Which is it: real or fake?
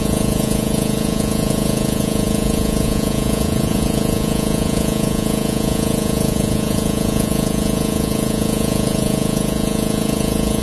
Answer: fake